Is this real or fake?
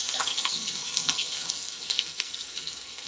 fake